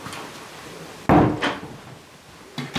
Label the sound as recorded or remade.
recorded